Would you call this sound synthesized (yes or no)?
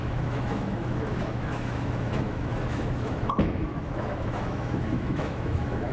yes